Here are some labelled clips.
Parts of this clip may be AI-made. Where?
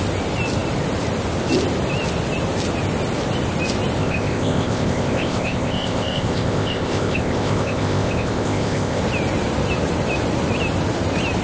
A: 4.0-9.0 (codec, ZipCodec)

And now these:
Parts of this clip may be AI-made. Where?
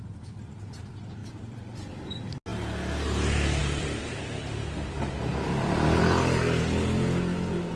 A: 1.2-2.3 (vocoder, BigVGAN v2); 3.6-6.0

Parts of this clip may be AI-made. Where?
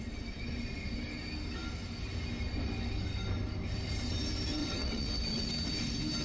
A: 4.6-5.8 (vocoder, WaveNeXt)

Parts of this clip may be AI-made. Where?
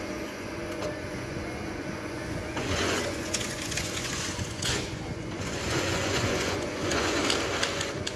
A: 0.0-7.2 (vocoder, Vocos); 7.7-8.2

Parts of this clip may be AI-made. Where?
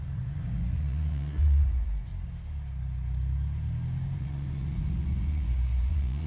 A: 0.0-2.1 (vocoder, Vocos); 4.2-6.3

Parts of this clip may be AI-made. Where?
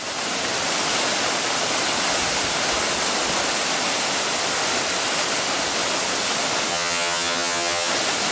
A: 6.7-7.9 (vocoder, HiFi-GAN)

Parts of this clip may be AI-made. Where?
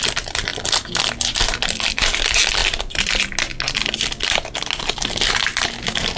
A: 2.6-3.2 (vocoder, BigVGAN v2)